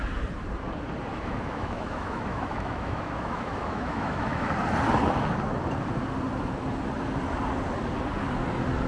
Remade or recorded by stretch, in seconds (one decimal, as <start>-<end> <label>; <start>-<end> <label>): 0.0-1.1 recorded; 1.1-4.5 remade; 4.5-8.9 recorded